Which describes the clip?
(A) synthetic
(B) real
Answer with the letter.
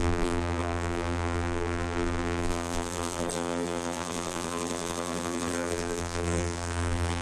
A